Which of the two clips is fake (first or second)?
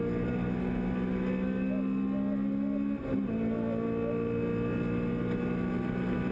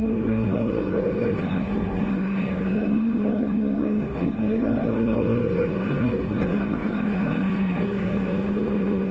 second